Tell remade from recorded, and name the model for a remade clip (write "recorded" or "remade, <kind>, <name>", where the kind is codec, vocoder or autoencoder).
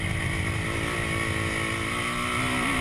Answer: recorded